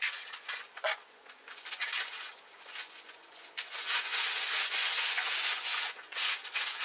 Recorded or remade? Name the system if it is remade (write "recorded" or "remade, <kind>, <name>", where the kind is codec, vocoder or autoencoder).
remade, vocoder, Vocos